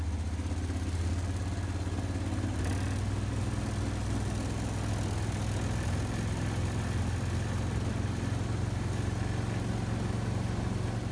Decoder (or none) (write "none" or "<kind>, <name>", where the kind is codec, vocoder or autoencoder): none